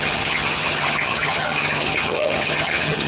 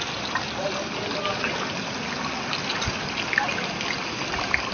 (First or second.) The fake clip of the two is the first